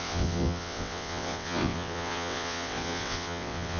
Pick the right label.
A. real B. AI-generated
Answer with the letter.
B